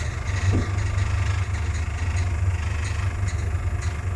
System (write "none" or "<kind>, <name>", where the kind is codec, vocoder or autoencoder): none